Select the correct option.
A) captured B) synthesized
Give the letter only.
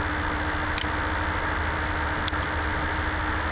A